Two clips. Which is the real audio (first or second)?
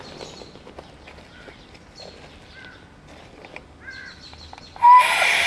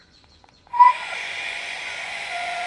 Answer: first